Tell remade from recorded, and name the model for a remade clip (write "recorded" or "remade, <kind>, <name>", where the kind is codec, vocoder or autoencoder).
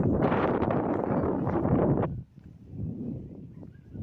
remade, vocoder, BigVGAN v2